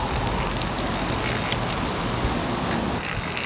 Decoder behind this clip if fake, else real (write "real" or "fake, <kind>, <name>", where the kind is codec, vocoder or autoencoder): real